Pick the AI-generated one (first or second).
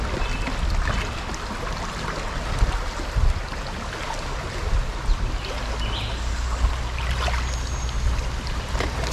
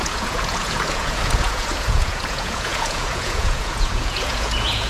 second